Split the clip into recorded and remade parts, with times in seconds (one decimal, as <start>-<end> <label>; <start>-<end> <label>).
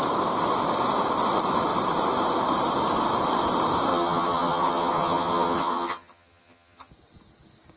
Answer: 0.0-3.9 recorded; 3.9-6.9 remade; 6.9-7.8 recorded